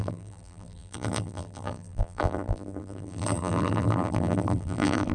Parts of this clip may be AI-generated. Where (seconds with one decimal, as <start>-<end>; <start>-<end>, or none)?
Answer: 0.0-5.1